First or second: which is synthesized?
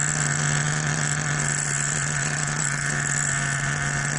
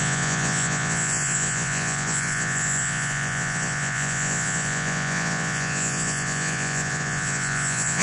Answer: second